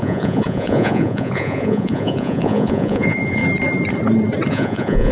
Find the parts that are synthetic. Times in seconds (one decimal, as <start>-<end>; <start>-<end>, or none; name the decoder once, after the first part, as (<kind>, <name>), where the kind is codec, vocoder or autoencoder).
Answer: 0.0-3.4 (vocoder, Vocos); 4.5-5.1